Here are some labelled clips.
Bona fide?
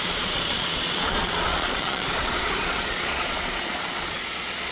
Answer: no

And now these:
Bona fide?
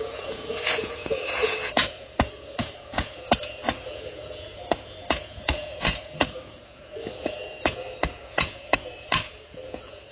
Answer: no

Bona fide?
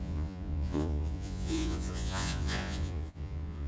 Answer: no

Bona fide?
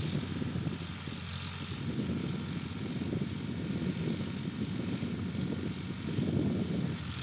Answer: yes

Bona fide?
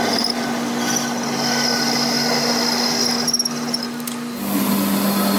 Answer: yes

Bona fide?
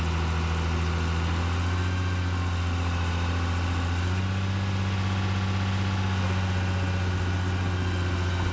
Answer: yes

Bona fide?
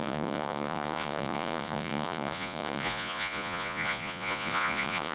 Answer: no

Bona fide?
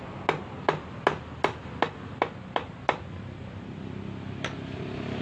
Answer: yes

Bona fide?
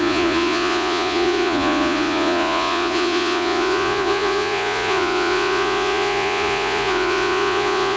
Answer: no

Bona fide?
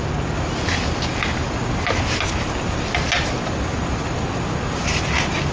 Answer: yes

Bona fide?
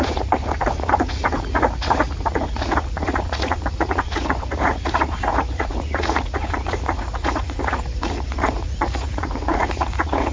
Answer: no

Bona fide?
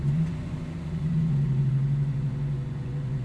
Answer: no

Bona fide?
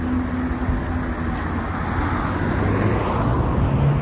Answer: yes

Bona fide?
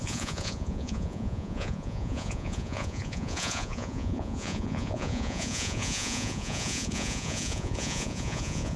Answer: no